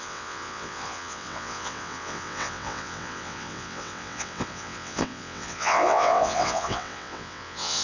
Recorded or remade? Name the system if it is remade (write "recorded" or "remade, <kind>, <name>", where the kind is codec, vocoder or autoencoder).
remade, vocoder, WaveNeXt